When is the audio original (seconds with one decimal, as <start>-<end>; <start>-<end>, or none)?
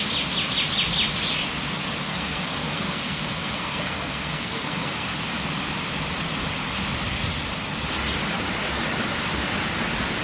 0.0-2.1; 5.1-10.2